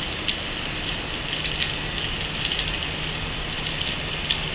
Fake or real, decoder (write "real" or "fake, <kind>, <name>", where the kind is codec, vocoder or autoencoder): real